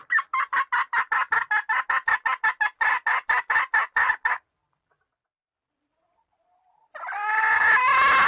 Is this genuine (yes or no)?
yes